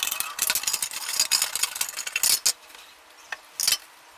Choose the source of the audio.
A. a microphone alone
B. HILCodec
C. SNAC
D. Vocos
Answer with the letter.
A